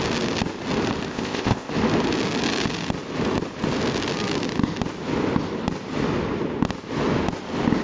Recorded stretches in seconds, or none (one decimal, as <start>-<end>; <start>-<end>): 0.0-1.1; 1.7-7.8